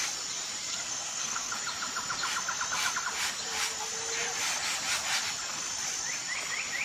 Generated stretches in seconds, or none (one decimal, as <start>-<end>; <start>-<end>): 0.7-1.5